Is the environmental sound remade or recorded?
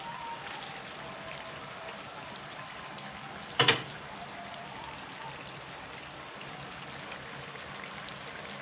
recorded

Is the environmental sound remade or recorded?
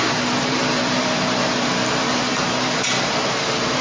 remade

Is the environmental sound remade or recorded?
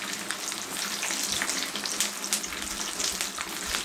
recorded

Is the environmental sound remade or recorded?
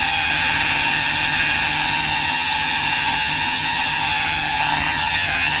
remade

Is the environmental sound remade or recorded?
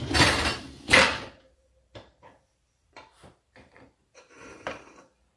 remade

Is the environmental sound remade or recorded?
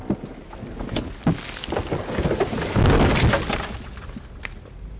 recorded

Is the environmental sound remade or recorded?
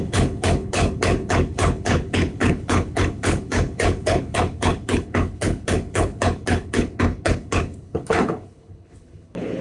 remade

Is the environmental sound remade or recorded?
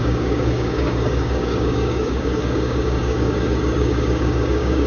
remade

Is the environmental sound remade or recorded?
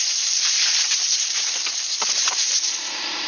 remade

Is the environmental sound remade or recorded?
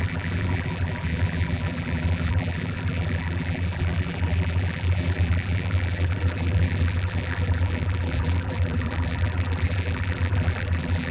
remade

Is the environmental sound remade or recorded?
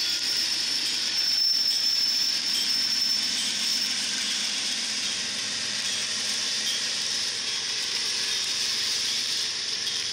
remade